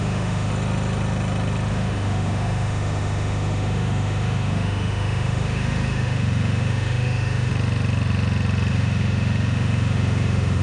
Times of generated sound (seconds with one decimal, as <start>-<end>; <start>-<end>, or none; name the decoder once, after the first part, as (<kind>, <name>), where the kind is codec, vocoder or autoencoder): 0.0-0.5 (autoencoder, DAC-VAE); 1.7-7.5; 8.7-10.6